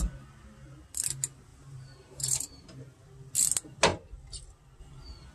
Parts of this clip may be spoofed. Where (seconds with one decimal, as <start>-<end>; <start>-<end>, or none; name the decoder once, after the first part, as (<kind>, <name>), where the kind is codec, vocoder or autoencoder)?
1.5-3.0 (vocoder, BigVGAN v2)